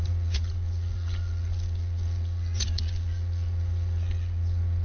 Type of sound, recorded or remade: remade